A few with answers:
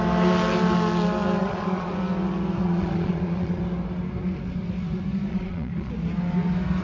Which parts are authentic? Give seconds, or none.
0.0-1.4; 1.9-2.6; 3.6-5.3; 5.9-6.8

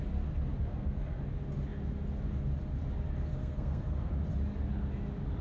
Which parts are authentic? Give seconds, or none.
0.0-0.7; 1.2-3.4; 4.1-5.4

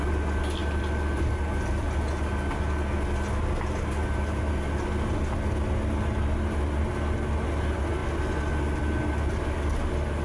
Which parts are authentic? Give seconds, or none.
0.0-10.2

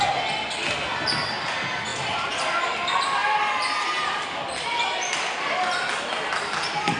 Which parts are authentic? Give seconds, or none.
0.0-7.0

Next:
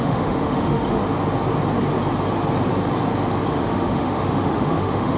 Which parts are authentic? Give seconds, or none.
1.0-3.5

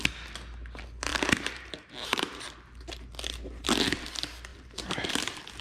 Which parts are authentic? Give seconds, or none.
0.0-1.1; 2.4-4.5; 5.1-5.6